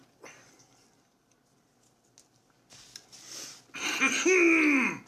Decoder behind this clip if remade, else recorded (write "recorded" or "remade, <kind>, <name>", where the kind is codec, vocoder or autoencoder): recorded